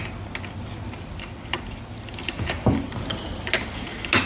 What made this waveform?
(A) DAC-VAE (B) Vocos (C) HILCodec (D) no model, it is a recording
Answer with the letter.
D